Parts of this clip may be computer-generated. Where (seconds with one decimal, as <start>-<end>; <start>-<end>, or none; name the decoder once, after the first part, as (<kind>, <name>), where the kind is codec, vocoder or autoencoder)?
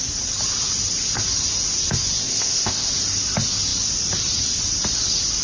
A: 2.2-2.9 (codec, ZipCodec)